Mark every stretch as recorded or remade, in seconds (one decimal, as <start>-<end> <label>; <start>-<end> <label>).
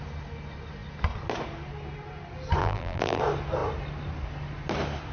0.0-2.6 recorded; 2.6-3.2 remade; 3.2-5.1 recorded